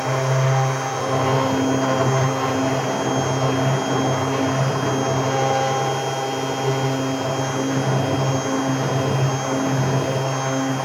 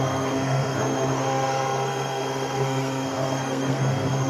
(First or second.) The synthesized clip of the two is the second